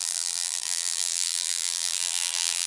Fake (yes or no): yes